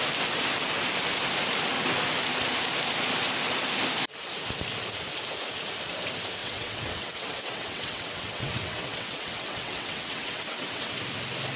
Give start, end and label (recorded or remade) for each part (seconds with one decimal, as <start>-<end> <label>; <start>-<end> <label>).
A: 0.0-6.4 recorded; 6.4-11.0 remade; 11.0-11.6 recorded